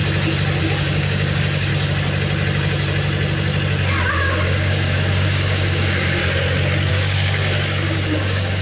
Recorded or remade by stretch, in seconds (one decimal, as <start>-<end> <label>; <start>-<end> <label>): 0.0-0.6 recorded; 0.6-1.7 remade; 1.7-4.1 recorded; 4.1-6.2 remade; 6.2-6.9 recorded; 6.9-8.6 remade